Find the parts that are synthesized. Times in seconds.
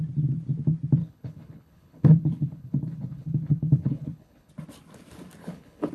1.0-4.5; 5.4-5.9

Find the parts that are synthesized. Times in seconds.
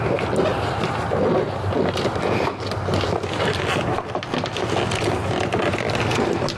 none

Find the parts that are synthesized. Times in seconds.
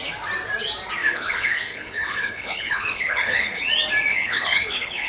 1.0-3.6; 4.1-5.1